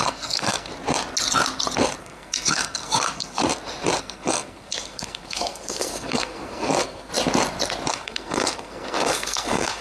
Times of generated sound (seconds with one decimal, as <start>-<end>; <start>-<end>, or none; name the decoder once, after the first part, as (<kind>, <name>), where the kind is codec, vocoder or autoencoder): 0.0-0.7 (codec, SNAC); 2.0-3.4; 4.0-7.1; 7.9-9.8